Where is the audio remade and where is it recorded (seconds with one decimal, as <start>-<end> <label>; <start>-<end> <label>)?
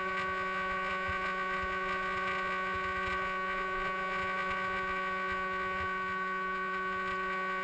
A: 0.0-7.6 remade